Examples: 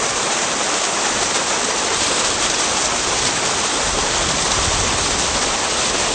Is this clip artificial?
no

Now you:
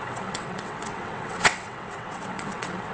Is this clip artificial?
yes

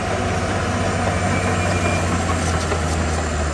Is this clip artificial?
no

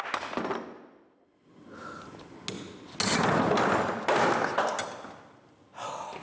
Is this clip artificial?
no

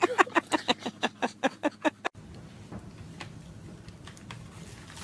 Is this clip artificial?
no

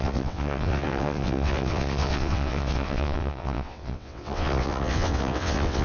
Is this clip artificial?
yes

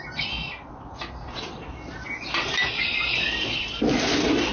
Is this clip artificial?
no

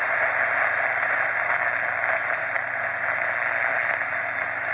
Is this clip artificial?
no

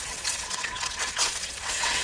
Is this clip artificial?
yes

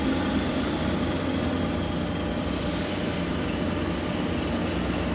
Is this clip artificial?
no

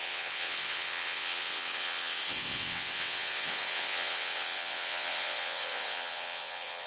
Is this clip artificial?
yes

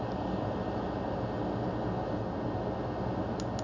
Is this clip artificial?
no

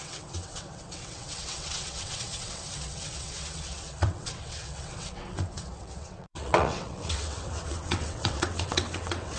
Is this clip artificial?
yes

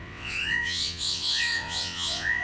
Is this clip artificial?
yes